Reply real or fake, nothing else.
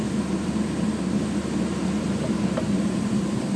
real